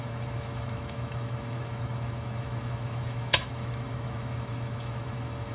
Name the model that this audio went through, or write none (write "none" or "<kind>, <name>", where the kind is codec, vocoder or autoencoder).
autoencoder, DAC-VAE